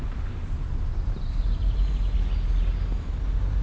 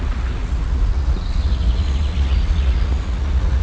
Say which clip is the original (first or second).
first